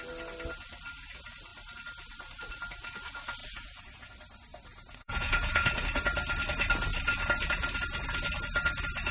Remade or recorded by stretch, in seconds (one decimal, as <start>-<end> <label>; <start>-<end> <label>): 0.0-3.4 recorded; 3.4-4.1 remade; 4.1-4.5 recorded; 4.5-5.8 remade; 5.8-9.1 recorded